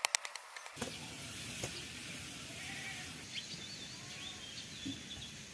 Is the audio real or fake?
real